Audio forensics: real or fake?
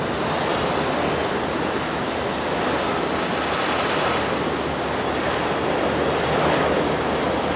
real